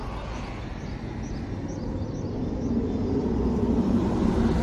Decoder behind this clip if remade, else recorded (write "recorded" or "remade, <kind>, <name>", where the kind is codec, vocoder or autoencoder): recorded